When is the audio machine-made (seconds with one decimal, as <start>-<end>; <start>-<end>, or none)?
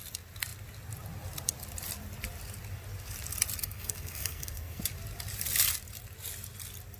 3.6-4.8